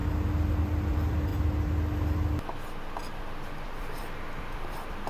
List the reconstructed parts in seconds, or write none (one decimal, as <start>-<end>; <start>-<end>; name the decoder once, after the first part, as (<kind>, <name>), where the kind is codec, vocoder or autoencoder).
0.9-1.3 (vocoder, BigVGAN v2); 3.0-5.1